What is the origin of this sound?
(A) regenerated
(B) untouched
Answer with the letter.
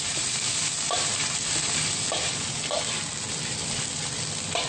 B